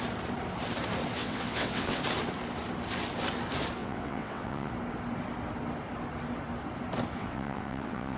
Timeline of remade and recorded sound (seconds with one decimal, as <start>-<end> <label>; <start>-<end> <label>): 0.0-1.2 recorded; 1.2-2.0 remade; 2.0-3.8 recorded; 3.8-4.7 remade; 4.7-7.2 recorded; 7.2-8.2 remade